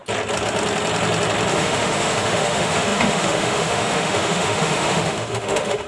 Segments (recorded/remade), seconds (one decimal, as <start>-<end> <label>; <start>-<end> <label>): 0.0-1.5 recorded; 1.5-5.9 remade